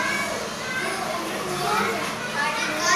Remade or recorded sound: recorded